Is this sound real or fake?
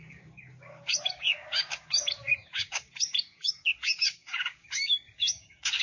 fake